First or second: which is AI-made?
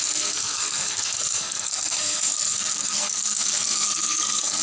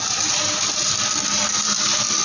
first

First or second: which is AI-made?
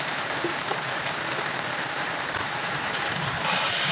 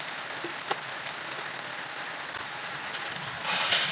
first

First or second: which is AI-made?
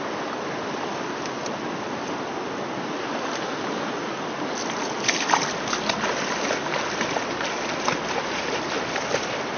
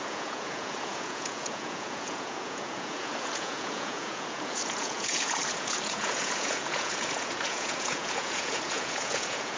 second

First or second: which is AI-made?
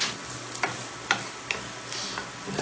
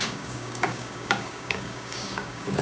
second